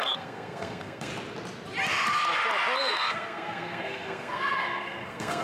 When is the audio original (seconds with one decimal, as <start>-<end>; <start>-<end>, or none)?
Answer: 1.1-2.8